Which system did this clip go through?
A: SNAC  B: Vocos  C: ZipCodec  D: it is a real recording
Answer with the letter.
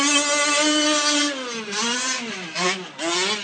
D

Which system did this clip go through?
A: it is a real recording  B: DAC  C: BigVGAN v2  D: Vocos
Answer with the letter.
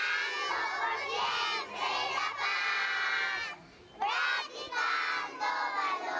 A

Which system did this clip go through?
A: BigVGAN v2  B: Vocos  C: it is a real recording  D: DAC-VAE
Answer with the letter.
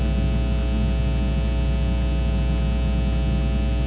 C